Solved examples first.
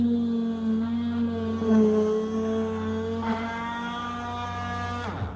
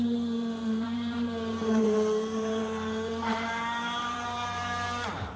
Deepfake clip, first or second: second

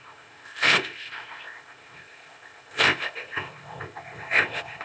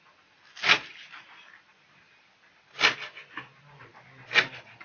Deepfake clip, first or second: first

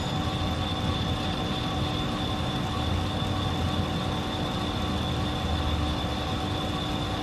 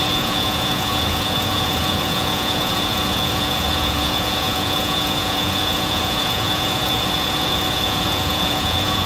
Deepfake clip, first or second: second